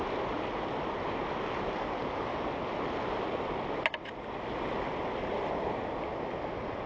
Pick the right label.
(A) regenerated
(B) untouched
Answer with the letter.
B